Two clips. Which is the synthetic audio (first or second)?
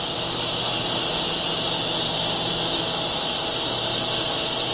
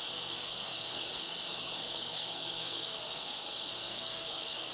second